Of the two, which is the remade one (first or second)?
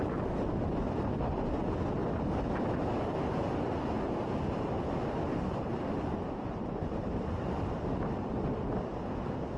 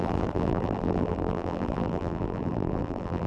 second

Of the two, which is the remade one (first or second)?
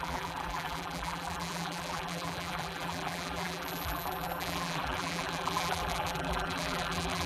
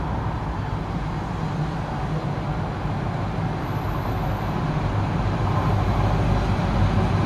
first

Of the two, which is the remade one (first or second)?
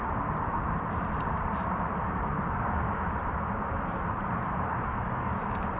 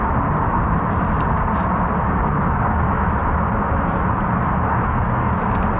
first